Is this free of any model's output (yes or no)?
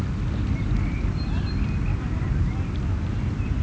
yes